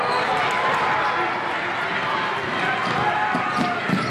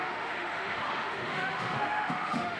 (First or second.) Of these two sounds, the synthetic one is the second